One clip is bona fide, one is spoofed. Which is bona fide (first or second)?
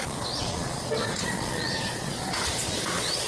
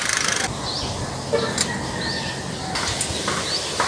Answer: second